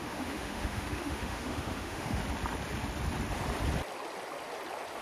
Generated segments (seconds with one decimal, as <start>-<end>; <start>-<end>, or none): 0.0-2.2